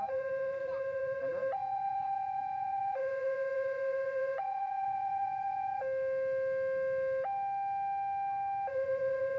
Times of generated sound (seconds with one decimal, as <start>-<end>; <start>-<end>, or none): 0.0-5.8; 8.7-9.4